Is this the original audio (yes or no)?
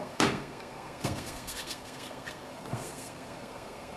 no